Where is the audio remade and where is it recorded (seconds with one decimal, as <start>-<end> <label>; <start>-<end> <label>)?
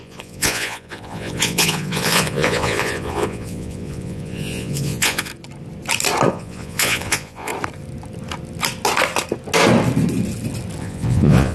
0.0-5.3 remade; 5.3-6.3 recorded; 6.3-7.5 remade; 7.5-10.8 recorded; 10.8-11.5 remade